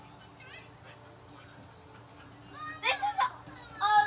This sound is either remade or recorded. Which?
recorded